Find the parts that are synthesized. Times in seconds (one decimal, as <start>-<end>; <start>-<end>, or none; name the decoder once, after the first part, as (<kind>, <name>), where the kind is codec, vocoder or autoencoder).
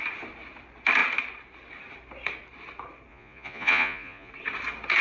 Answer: 3.1-4.3 (vocoder, Vocos)